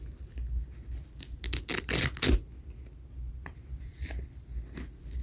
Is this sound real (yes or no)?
yes